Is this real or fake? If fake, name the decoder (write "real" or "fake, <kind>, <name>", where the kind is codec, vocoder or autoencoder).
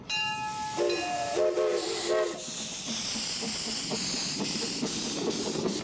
real